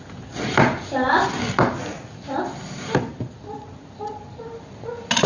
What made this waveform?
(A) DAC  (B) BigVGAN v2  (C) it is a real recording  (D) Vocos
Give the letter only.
C